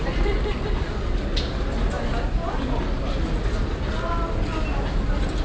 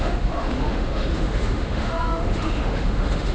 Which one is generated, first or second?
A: second